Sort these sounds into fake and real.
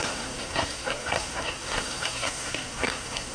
fake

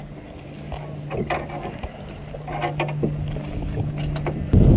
real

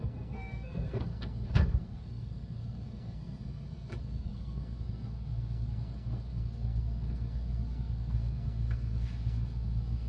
fake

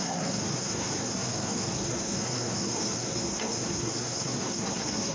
fake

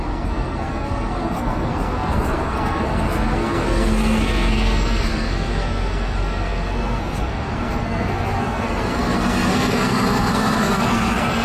fake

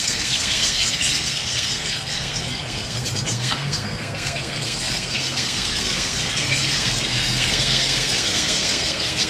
fake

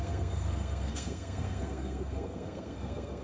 fake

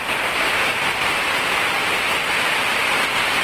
real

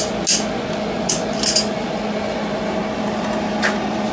real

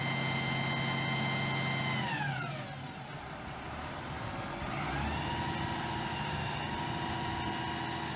real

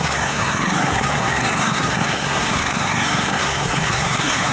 fake